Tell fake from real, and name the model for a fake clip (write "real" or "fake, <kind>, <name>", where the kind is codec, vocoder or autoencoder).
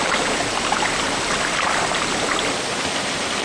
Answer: real